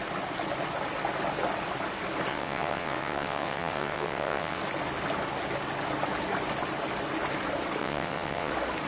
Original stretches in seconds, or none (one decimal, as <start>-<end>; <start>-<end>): 0.0-2.3; 4.6-7.8; 8.5-8.9